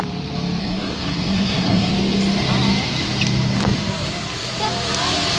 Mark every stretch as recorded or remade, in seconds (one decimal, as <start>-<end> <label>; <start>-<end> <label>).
0.0-0.6 recorded; 0.6-1.9 remade; 1.9-5.4 recorded